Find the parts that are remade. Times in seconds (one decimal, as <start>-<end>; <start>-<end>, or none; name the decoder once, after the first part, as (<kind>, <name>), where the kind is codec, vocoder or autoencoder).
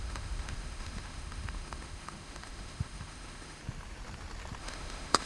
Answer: 0.0-3.6 (autoencoder, DAC-VAE); 4.6-5.3